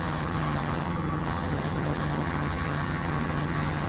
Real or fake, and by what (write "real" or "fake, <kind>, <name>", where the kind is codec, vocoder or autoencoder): fake, vocoder, HiFi-GAN